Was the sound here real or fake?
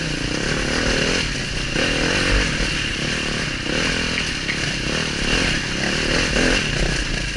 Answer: real